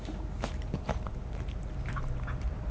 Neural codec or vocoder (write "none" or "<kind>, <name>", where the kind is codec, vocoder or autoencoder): vocoder, BigVGAN v2